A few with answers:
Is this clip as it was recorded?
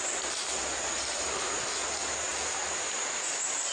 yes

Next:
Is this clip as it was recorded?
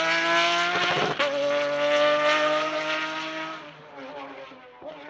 yes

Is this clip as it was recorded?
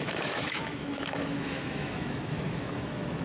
no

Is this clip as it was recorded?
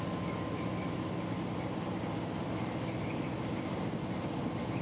yes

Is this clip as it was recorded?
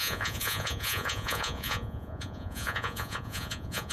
no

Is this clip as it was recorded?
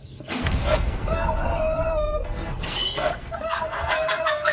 no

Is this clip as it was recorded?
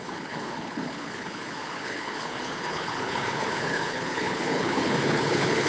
no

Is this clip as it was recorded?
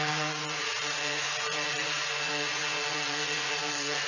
no